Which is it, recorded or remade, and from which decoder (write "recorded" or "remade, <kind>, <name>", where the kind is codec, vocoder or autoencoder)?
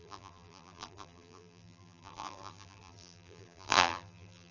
remade, vocoder, BigVGAN v2